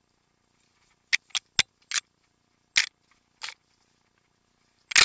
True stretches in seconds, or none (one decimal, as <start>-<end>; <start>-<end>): 0.0-5.0